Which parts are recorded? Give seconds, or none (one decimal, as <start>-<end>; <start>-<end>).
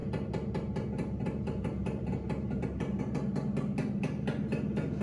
0.0-5.0